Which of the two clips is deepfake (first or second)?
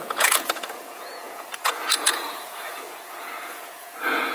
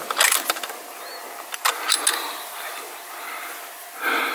first